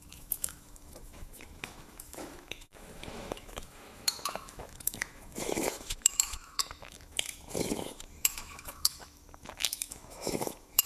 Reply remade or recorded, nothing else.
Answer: remade